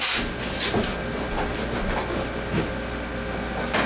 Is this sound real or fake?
real